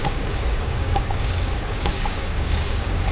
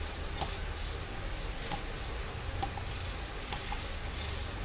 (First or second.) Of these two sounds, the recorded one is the second